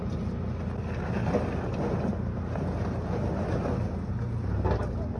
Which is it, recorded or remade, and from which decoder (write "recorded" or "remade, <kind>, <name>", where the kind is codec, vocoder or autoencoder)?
recorded